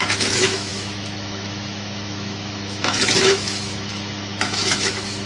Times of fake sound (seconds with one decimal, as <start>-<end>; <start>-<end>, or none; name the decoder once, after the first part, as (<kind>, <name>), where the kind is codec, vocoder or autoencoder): 0.0-5.3 (autoencoder, DAC-VAE)